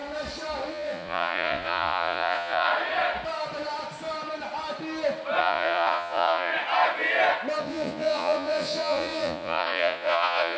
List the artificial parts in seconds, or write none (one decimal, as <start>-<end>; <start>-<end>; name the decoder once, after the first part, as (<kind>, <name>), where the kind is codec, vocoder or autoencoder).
0.7-2.7 (vocoder, Vocos); 5.4-6.5; 7.6-10.6